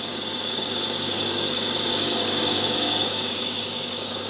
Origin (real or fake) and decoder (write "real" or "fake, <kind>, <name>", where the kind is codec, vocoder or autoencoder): fake, codec, DAC